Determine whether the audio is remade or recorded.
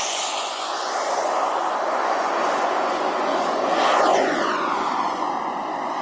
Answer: remade